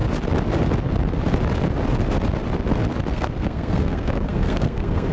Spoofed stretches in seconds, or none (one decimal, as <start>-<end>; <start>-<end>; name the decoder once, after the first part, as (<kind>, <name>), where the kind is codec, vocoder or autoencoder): 3.1-5.1 (codec, SNAC)